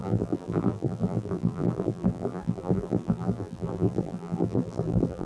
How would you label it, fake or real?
fake